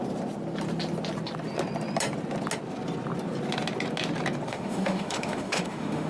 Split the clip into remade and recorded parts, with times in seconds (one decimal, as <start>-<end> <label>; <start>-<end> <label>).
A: 0.0-4.5 recorded; 4.5-6.1 remade